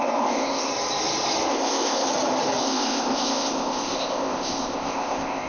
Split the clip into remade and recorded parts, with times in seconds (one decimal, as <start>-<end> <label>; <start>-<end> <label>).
0.0-0.7 remade; 0.7-1.5 recorded; 1.5-2.1 remade; 2.1-2.6 recorded; 2.6-5.5 remade